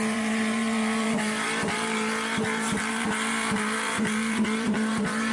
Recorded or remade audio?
remade